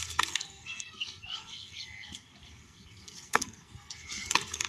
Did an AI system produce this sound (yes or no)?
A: yes